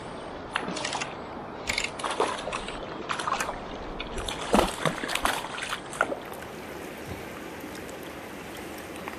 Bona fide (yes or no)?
yes